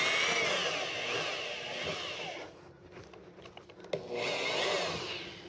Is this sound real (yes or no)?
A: yes